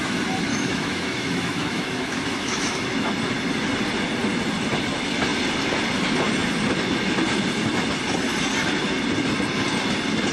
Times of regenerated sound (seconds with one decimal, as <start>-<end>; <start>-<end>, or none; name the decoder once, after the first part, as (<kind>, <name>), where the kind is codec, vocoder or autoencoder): 0.5-3.1 (autoencoder, DAC-VAE)